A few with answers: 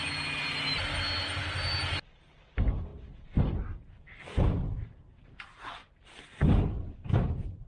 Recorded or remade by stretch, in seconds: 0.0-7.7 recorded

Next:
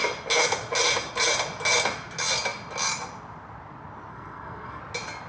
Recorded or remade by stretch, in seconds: 0.0-4.1 recorded; 4.1-4.8 remade; 4.8-5.3 recorded

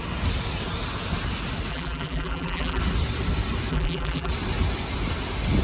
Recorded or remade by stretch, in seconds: 0.0-1.7 recorded; 1.7-2.8 remade; 2.8-3.7 recorded; 3.7-4.3 remade; 4.3-5.6 recorded

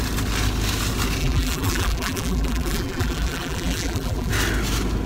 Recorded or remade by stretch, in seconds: 0.0-1.2 recorded; 1.2-4.3 remade; 4.3-5.1 recorded

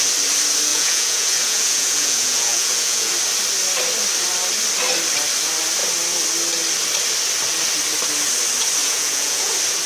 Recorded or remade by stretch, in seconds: 0.0-0.7 recorded; 0.7-3.1 remade; 3.1-8.8 recorded; 8.8-9.5 remade; 9.5-9.9 recorded

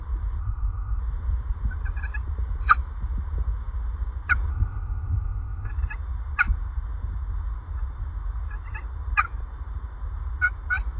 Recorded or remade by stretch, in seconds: 0.0-0.4 recorded; 0.4-1.0 remade; 1.0-4.5 recorded; 4.5-5.7 remade; 5.7-11.0 recorded